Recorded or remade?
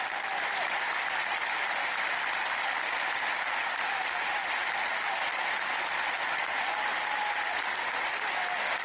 remade